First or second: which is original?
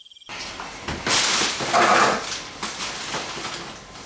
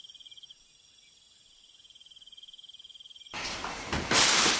first